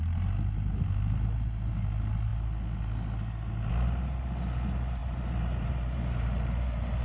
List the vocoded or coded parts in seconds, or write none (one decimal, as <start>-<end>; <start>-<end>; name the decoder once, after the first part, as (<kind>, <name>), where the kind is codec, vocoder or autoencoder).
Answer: 5.0-7.0 (vocoder, BigVGAN v2)